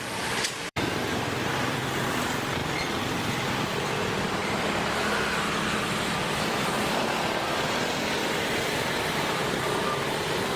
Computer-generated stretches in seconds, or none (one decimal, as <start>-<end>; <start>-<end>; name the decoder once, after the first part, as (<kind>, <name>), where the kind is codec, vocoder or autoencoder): 0.0-4.4 (vocoder, BigVGAN v2); 6.7-10.6

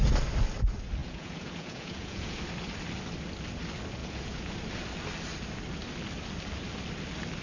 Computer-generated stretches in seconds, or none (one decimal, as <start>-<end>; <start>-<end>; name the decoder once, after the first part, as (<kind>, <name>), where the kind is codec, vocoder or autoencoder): 1.0-2.4 (vocoder, Vocos); 4.0-4.5